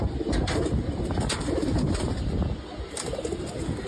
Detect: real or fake real